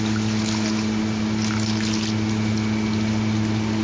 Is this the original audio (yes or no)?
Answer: yes